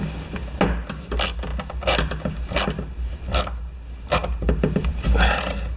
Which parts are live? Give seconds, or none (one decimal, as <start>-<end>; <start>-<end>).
0.0-5.8